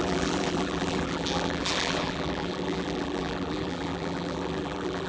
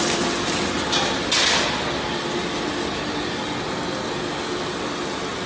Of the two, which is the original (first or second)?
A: second